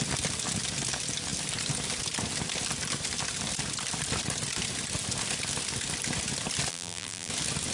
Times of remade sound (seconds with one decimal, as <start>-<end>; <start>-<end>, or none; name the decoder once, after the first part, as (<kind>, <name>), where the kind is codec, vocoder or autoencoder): 6.7-7.3 (vocoder, BigVGAN v2)